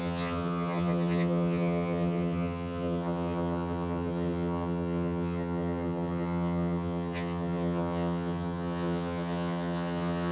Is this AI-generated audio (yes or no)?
yes